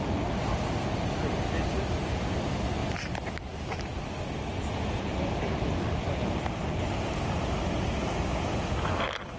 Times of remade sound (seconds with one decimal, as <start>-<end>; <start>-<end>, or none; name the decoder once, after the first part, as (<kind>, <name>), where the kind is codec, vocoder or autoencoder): none

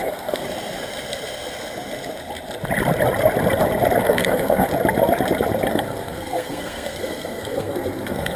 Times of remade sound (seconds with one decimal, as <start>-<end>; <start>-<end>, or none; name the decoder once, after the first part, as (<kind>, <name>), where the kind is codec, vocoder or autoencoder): 0.0-0.4 (codec, SNAC); 4.0-4.7; 5.7-8.4

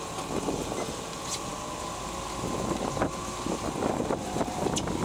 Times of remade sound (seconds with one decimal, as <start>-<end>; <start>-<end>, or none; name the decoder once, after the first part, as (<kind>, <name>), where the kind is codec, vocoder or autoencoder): none

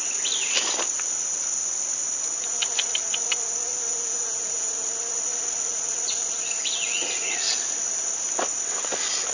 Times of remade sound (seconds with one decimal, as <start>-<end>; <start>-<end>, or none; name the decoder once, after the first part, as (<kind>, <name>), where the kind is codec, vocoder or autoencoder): 3.9-4.7 (vocoder, Vocos)

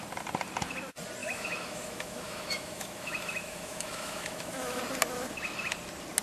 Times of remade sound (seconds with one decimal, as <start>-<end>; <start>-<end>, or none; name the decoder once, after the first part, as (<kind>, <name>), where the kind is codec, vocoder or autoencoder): 1.2-4.8 (autoencoder, DAC-VAE)